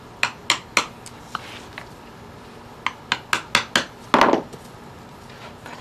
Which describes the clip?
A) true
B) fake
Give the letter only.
A